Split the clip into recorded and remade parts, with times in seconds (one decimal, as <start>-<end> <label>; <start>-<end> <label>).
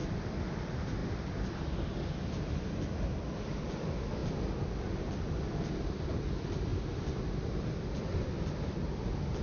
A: 0.0-9.4 recorded